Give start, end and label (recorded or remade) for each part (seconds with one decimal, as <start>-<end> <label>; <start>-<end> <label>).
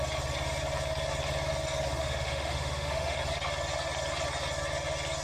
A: 0.0-1.9 recorded; 1.9-3.2 remade; 3.2-5.2 recorded